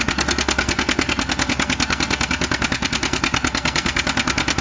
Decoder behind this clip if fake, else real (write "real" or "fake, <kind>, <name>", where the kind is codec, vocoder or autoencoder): fake, codec, SNAC